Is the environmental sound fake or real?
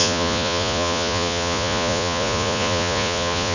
fake